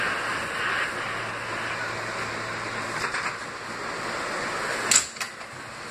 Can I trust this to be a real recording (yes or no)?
yes